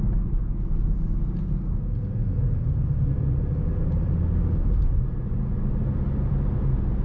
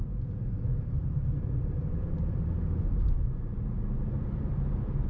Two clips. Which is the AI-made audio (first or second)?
second